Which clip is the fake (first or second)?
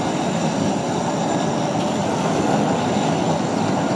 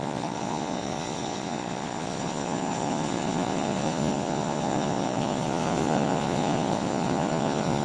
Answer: second